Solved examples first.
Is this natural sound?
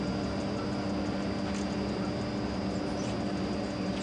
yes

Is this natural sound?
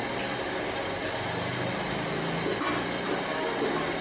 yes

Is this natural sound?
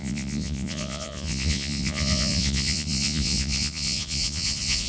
no